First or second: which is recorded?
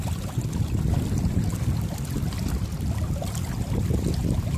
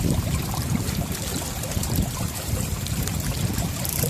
first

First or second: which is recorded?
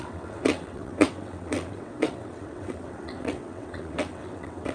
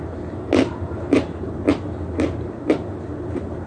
second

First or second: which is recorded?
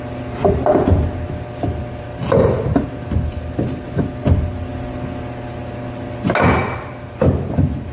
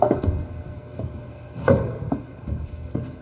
first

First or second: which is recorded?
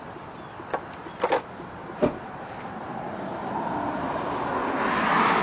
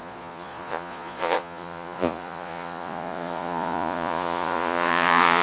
first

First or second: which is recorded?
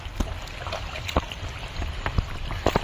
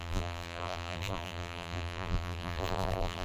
first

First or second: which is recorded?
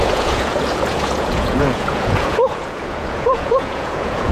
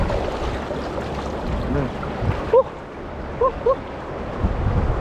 second